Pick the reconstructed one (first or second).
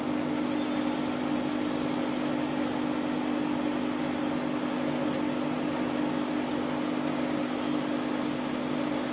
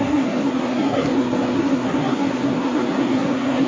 second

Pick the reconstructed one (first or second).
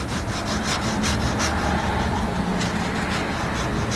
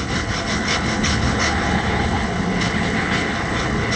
second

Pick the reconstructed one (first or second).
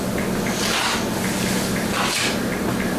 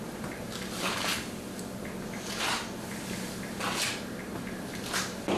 second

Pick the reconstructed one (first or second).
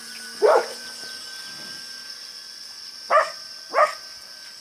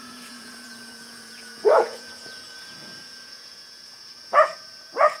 second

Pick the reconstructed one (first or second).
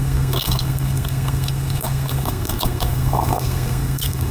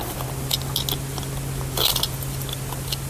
first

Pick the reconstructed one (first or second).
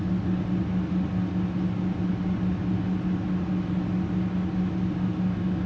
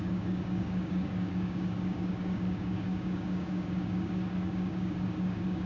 second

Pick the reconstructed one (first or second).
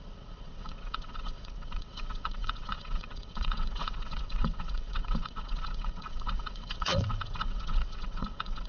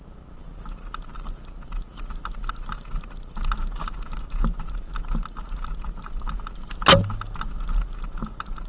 first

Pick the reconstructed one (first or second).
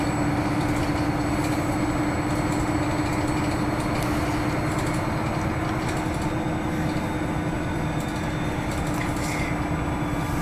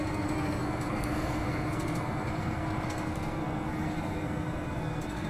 second